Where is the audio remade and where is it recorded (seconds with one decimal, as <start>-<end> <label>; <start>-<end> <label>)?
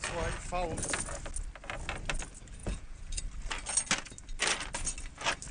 0.0-2.6 recorded; 2.6-3.2 remade; 3.2-5.5 recorded